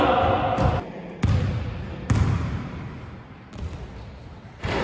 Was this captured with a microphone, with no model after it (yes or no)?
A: yes